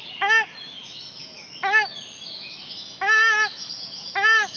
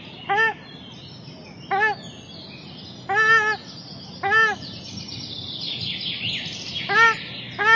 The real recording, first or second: second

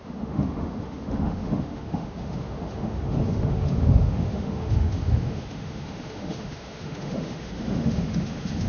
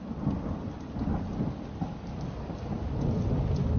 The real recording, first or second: second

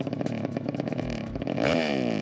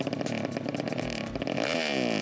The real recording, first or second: second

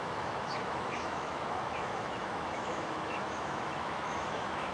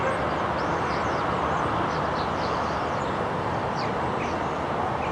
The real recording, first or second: second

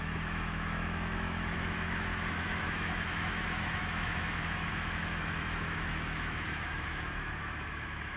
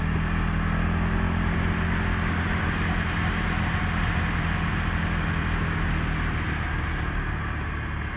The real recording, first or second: second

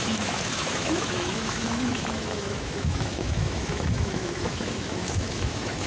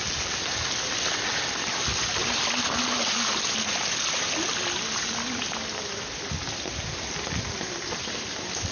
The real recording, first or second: second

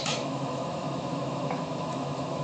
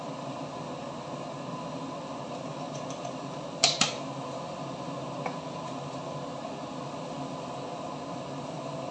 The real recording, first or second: second